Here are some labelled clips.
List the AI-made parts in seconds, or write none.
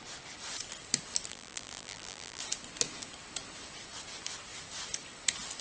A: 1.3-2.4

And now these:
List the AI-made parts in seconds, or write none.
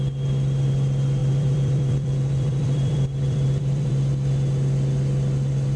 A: 1.2-3.9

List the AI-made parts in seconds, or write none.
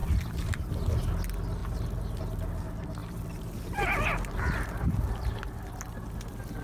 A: 0.0-0.7; 3.0-5.1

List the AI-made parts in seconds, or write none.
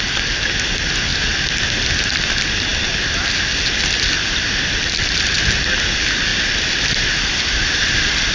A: none